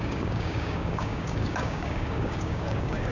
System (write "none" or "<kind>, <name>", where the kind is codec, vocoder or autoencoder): codec, DAC